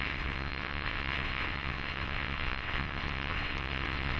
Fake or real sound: fake